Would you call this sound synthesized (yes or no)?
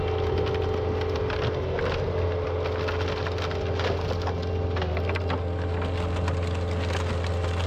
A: no